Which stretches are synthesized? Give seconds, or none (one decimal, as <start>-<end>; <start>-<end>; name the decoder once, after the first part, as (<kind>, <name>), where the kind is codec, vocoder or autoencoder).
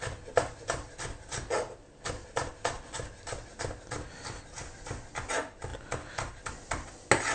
none